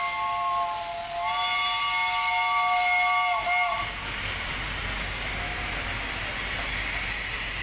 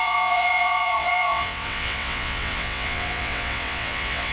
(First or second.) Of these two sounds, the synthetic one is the second